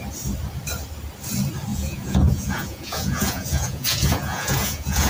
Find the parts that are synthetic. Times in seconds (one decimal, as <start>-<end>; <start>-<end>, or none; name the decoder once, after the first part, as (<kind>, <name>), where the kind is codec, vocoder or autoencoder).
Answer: 1.7-5.1 (vocoder, Vocos)